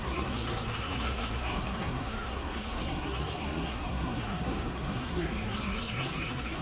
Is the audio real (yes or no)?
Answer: no